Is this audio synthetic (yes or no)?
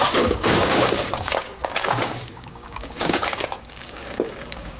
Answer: yes